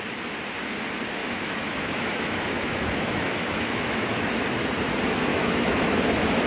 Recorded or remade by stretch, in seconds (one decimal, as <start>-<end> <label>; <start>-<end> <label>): 0.0-1.2 recorded; 1.2-4.3 remade; 4.3-5.3 recorded; 5.3-6.1 remade; 6.1-6.5 recorded